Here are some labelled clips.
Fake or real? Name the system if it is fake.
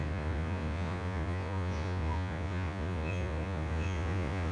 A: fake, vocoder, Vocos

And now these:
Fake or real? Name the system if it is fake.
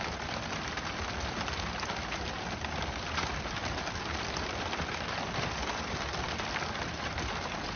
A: fake, vocoder, BigVGAN v2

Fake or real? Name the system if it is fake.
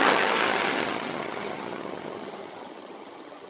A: fake, vocoder, HiFi-GAN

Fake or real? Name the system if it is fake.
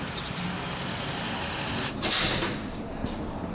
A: fake, vocoder, BigVGAN v2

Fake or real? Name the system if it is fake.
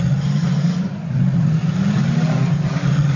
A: real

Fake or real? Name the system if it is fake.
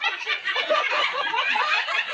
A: fake, vocoder, Vocos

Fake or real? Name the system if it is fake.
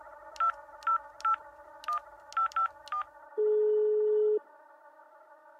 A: real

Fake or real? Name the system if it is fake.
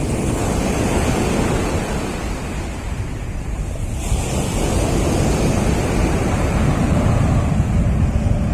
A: real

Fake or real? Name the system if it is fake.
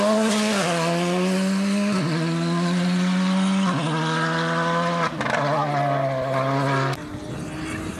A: real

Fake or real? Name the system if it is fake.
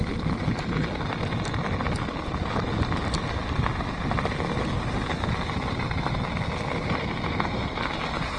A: real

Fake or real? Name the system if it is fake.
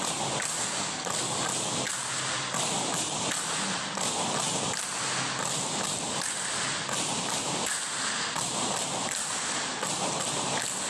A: real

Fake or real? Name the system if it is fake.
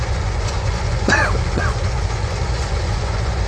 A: fake, vocoder, Vocos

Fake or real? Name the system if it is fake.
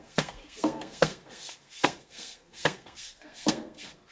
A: fake, codec, SNAC